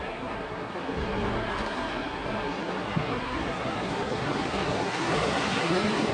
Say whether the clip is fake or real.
fake